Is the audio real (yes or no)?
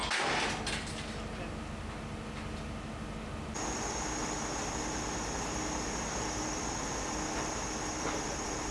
yes